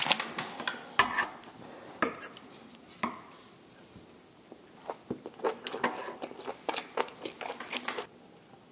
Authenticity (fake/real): real